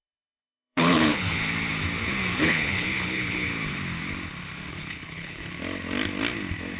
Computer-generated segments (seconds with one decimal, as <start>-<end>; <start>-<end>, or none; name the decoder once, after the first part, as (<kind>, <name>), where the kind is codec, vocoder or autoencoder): 0.0-1.4 (codec, HILCodec); 2.4-3.5; 4.7-5.4